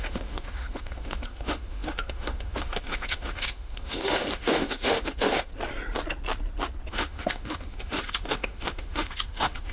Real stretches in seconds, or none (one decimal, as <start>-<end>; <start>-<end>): 5.5-6.9

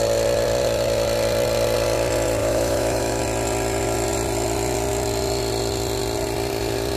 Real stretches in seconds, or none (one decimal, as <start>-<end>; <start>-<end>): 0.0-2.4; 3.2-7.0

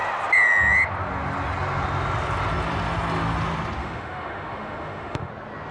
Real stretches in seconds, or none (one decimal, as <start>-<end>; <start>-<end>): 0.0-3.8; 5.3-5.7

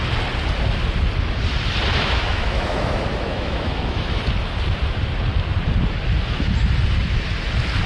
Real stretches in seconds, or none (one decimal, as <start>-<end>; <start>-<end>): 0.0-1.9; 4.2-7.9

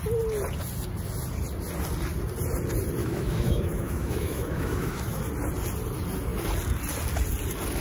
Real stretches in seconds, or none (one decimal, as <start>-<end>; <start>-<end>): 0.0-3.0; 5.2-7.8

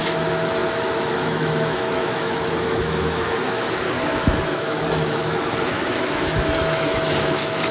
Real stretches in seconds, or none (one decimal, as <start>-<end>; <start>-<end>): none